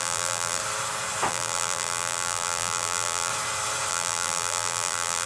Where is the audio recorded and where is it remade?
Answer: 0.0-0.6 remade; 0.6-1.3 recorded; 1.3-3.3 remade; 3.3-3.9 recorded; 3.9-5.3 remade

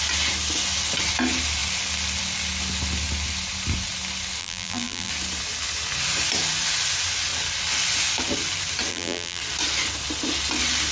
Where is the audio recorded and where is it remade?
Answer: 0.0-4.4 recorded; 4.4-5.1 remade; 5.1-8.9 recorded; 8.9-9.4 remade; 9.4-10.9 recorded

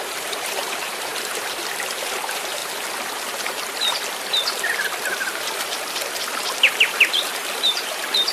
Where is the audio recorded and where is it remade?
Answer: 0.0-2.6 remade; 2.6-6.7 recorded; 6.7-8.3 remade

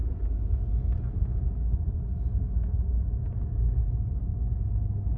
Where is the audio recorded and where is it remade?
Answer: 0.0-0.7 remade; 0.7-5.2 recorded